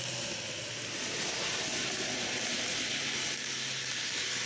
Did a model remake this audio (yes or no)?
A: no